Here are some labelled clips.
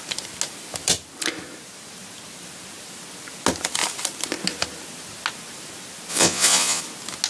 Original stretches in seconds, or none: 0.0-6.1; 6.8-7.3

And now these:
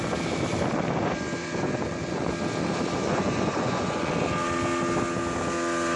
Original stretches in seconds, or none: 0.0-1.4; 2.2-3.0; 4.1-6.0

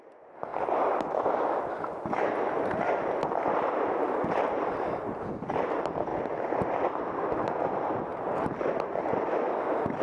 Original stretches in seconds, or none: 0.0-10.0

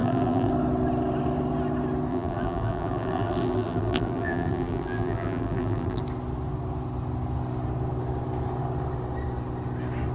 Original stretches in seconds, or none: 0.5-2.1; 6.0-10.1

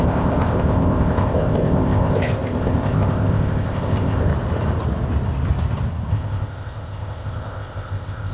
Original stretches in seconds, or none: 4.3-6.1

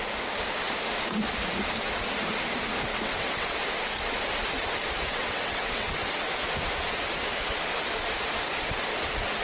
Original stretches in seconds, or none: 0.0-2.9; 3.7-5.1; 5.9-9.4